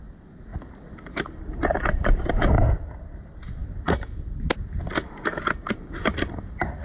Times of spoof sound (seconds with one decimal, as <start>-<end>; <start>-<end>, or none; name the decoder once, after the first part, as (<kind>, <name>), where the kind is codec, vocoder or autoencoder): 0.0-3.6 (vocoder, BigVGAN v2); 5.7-6.8